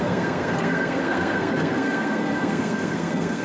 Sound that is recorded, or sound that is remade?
remade